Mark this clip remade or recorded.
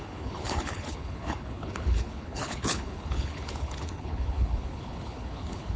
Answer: remade